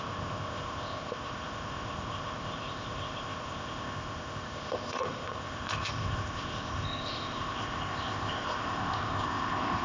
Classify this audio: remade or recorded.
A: remade